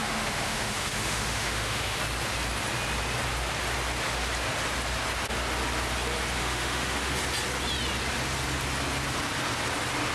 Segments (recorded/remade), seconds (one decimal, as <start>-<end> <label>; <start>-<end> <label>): 0.0-2.0 remade; 2.0-6.4 recorded; 6.4-7.1 remade; 7.1-10.1 recorded